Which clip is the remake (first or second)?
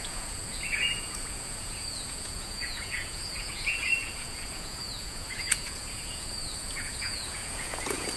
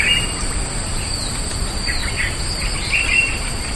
first